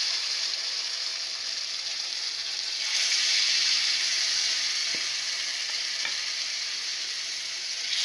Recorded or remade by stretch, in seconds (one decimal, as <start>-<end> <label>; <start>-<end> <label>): 0.0-1.1 remade; 1.1-1.9 recorded; 1.9-4.8 remade; 4.8-5.7 recorded; 5.7-8.0 remade